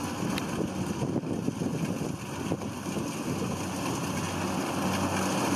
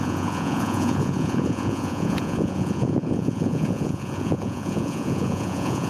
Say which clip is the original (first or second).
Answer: first